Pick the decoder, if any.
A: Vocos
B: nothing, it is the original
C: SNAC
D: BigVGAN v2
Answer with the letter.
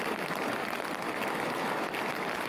B